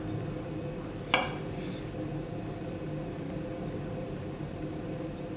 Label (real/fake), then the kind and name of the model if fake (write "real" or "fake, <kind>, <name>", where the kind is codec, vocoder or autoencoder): real